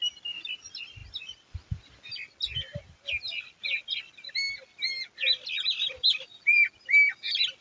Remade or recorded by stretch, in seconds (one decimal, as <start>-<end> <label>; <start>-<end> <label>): 0.0-1.0 recorded; 1.0-4.0 remade; 4.0-7.6 recorded